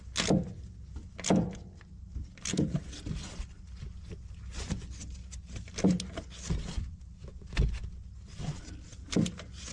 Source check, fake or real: real